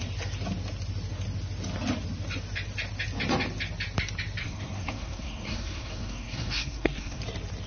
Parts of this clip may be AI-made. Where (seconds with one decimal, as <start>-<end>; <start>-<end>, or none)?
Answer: 4.4-7.2